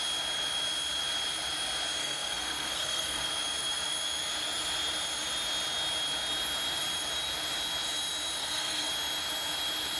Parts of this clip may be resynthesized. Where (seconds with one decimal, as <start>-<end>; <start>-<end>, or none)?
2.0-3.3; 8.4-8.9